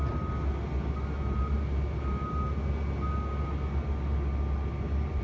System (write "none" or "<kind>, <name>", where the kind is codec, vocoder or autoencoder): none